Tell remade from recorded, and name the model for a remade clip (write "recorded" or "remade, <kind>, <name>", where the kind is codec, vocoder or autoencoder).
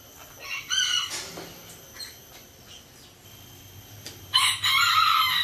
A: recorded